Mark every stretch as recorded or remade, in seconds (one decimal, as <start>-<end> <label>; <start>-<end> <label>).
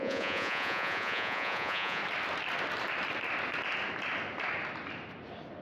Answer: 0.0-2.0 remade; 2.0-5.6 recorded